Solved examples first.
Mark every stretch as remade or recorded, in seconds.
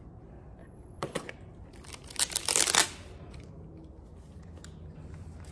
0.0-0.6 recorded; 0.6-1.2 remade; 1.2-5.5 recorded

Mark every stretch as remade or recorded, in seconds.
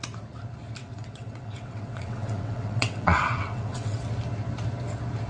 0.0-0.8 recorded; 0.8-4.0 remade; 4.0-5.3 recorded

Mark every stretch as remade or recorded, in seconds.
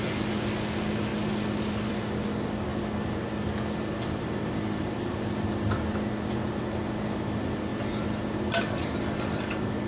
0.0-9.9 recorded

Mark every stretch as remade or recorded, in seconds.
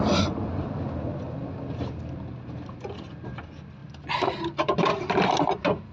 0.0-5.9 recorded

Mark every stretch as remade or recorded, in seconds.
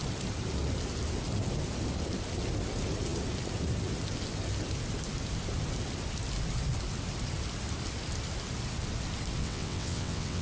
0.0-9.4 recorded; 9.4-10.4 remade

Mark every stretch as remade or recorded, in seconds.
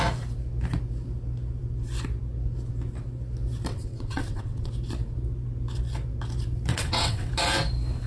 0.0-3.7 recorded; 3.7-4.7 remade; 4.7-6.7 recorded; 6.7-7.3 remade; 7.3-8.1 recorded